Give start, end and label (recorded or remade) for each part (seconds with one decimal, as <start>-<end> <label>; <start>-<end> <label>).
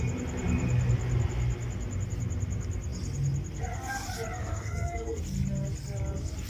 0.0-4.4 recorded; 4.4-5.2 remade; 5.2-6.5 recorded